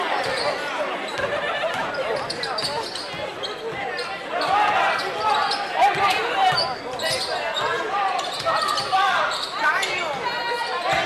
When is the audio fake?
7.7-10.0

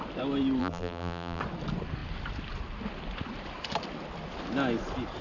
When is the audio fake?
0.6-1.4

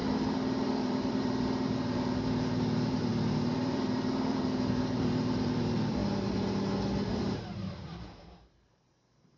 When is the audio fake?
0.0-6.0; 7.1-9.4